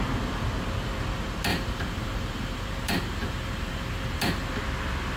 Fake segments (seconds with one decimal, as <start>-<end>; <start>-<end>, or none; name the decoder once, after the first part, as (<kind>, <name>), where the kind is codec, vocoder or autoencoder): 1.5-4.6 (vocoder, BigVGAN v2)